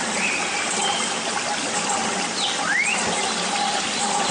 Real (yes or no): yes